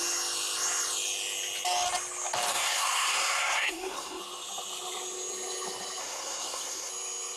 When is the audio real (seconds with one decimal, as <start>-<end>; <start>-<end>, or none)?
0.0-2.5; 4.2-6.0; 6.9-7.4